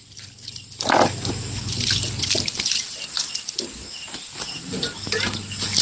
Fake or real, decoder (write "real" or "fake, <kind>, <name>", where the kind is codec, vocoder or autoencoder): real